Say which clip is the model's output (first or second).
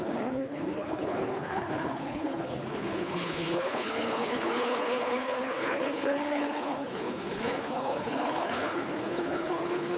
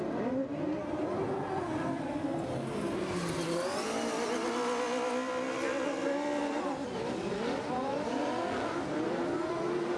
first